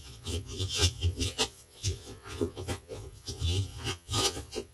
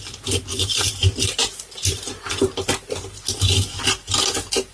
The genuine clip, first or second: second